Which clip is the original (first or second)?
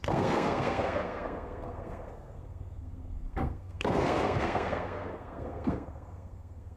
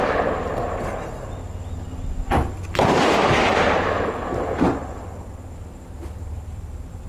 second